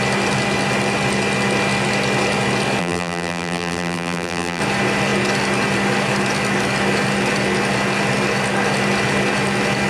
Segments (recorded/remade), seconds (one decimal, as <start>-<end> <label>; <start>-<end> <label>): 0.0-2.8 recorded; 2.8-4.6 remade; 4.6-9.9 recorded